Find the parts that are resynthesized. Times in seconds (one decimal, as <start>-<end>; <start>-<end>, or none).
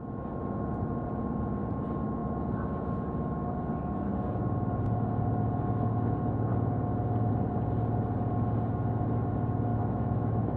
9.7-10.6